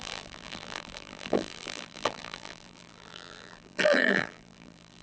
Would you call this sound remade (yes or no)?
yes